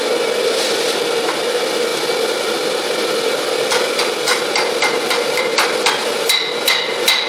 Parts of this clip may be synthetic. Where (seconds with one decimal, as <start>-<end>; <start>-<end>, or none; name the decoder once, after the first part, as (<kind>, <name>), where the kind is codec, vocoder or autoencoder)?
0.6-1.3 (vocoder, BigVGAN v2); 1.9-5.4